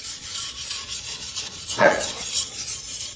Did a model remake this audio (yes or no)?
yes